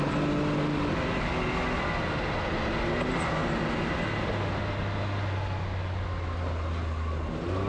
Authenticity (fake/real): real